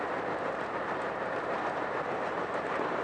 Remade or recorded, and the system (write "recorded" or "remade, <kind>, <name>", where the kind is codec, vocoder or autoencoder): remade, vocoder, BigVGAN v2